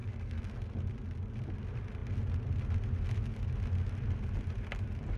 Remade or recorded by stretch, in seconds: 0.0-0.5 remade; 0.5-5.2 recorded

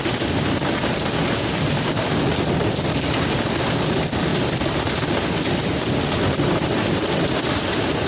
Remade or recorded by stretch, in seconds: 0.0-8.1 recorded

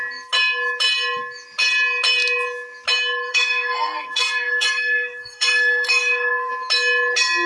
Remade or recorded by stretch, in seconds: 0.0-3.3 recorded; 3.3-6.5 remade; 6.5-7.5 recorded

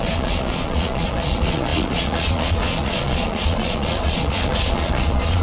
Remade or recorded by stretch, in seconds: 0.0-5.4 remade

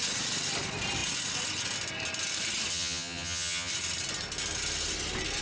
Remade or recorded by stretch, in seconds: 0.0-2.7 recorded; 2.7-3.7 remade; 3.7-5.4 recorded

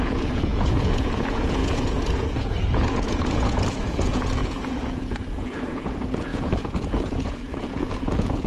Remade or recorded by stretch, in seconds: 0.0-8.5 remade